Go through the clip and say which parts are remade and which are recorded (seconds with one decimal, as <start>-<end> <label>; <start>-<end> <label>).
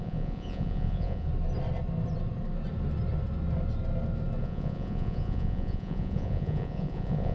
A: 0.0-1.3 remade; 1.3-4.4 recorded; 4.4-7.3 remade